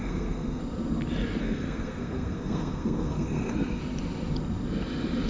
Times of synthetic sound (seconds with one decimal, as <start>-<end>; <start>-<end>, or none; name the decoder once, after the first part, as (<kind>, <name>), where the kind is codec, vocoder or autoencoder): 0.0-0.6 (codec, SNAC); 1.4-3.8